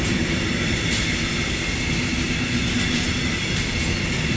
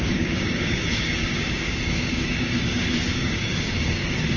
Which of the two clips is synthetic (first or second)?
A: second